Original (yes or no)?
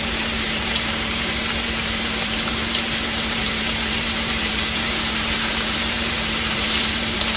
no